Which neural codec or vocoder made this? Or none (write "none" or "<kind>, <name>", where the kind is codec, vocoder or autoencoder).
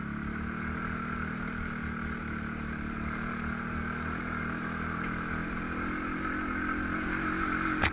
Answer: none